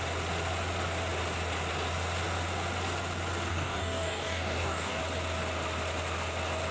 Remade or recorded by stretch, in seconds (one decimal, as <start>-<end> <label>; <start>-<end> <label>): 0.0-3.5 recorded; 3.5-5.0 remade; 5.0-6.7 recorded